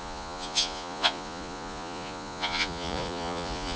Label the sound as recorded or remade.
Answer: remade